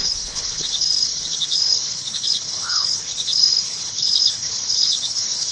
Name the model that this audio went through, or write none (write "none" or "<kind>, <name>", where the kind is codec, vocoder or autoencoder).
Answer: codec, HILCodec